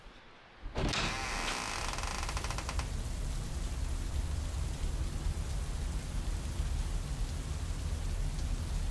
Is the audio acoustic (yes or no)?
yes